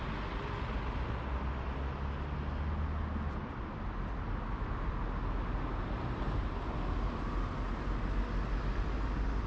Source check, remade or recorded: recorded